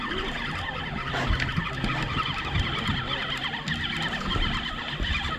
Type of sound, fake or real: real